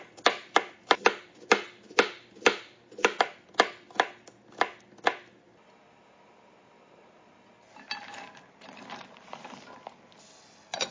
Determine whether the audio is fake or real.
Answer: real